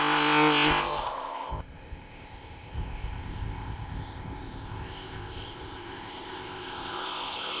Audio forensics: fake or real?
fake